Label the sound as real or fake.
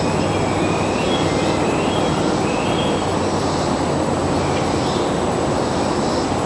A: real